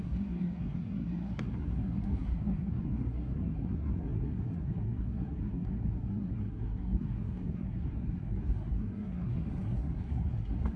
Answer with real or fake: fake